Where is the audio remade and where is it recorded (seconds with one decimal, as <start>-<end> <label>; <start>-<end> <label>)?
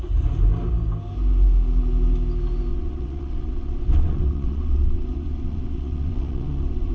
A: 0.0-2.7 recorded; 2.7-6.9 remade